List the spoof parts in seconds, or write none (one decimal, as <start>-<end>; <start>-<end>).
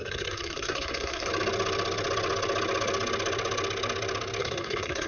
0.0-1.3; 4.4-5.1